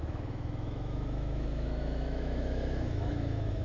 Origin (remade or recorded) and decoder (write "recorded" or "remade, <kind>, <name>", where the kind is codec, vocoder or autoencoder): remade, autoencoder, DAC-VAE